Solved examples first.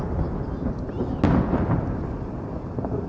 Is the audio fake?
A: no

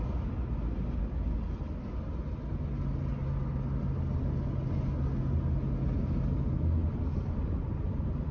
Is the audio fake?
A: no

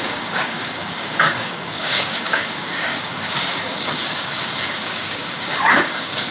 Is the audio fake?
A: yes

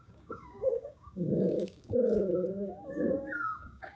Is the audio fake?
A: yes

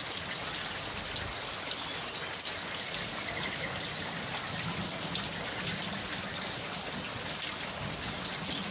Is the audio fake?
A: no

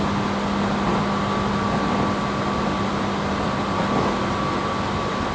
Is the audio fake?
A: no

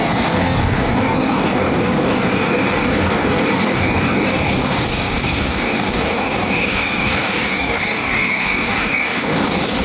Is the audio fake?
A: yes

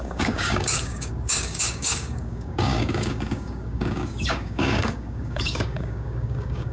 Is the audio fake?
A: yes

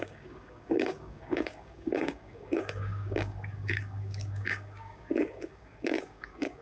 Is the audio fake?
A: yes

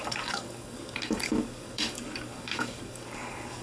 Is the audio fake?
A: yes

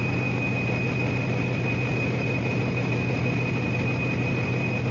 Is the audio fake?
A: no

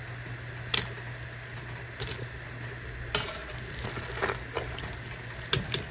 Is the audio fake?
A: no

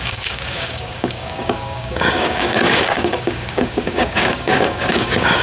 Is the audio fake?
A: yes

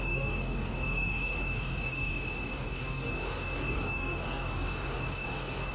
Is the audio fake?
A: yes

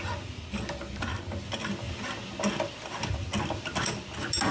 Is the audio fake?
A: no